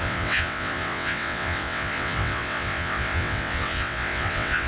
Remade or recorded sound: remade